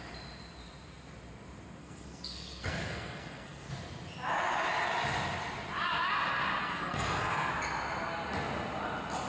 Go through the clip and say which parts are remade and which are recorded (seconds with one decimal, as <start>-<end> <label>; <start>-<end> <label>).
0.0-1.8 recorded; 1.8-3.7 remade; 3.7-6.6 recorded; 6.6-7.5 remade; 7.5-9.3 recorded